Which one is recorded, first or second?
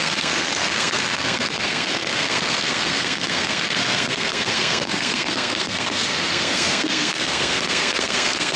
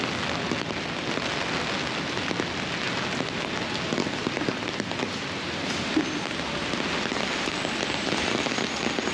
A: second